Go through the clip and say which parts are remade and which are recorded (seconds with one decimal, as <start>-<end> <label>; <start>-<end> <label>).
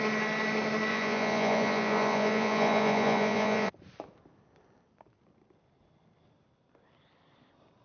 0.0-0.9 recorded; 0.9-3.7 remade; 3.7-7.8 recorded